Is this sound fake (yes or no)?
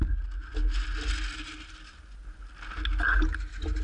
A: no